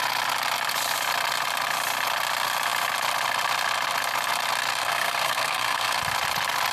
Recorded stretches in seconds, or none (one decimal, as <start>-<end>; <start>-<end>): 0.0-4.8; 6.0-6.7